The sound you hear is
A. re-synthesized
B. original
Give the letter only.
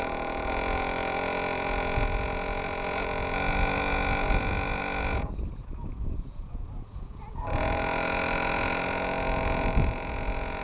A